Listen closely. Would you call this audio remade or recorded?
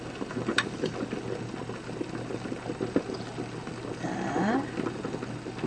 recorded